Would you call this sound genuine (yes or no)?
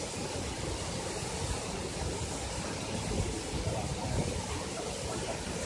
yes